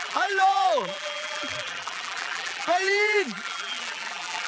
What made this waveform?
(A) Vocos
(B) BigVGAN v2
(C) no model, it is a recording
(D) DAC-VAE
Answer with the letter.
B